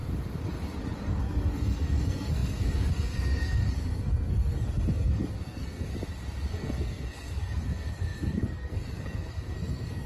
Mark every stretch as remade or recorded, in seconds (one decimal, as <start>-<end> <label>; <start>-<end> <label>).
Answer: 0.0-1.1 recorded; 1.1-5.9 remade; 5.9-6.5 recorded; 6.5-10.1 remade